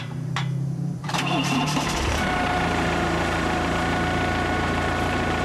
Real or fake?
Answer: fake